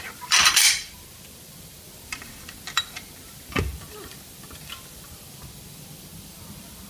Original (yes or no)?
no